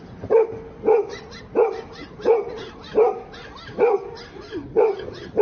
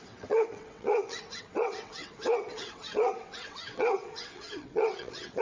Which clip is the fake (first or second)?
second